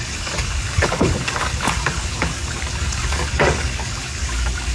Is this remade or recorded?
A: remade